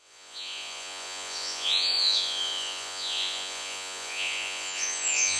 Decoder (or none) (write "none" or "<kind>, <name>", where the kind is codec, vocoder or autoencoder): vocoder, Vocos